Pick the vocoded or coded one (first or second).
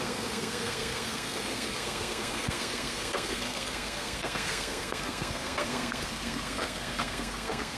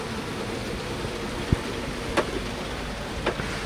first